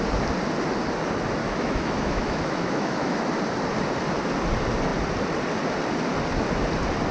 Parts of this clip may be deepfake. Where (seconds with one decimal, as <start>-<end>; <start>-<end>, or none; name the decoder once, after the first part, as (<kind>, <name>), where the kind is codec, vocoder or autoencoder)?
1.4-3.3 (autoencoder, DAC-VAE)